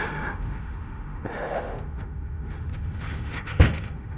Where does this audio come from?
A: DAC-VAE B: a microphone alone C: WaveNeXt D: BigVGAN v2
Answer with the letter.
A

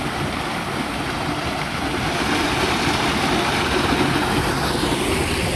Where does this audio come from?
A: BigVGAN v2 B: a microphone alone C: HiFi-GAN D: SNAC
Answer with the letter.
B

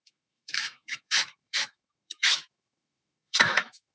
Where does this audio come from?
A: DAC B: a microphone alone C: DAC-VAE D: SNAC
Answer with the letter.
C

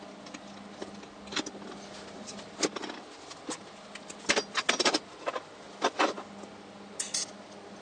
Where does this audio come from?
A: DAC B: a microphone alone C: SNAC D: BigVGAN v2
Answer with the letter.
B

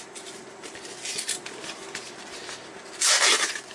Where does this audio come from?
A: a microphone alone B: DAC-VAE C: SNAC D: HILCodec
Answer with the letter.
A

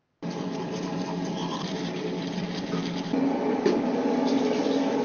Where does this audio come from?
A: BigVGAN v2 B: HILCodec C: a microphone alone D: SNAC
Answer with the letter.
C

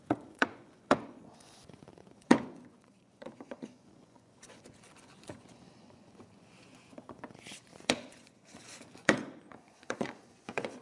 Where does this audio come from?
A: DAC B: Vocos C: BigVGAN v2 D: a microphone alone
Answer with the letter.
B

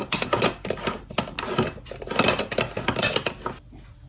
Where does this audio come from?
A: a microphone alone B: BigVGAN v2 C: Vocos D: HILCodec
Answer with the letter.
A